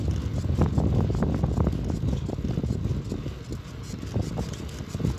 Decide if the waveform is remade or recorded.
recorded